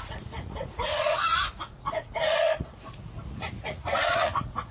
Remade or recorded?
remade